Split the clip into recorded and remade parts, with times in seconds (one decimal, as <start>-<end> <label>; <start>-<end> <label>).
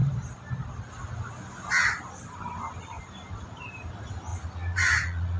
0.0-4.3 recorded; 4.3-5.4 remade